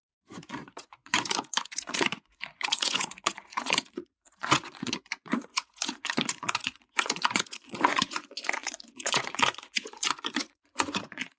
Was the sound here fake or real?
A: fake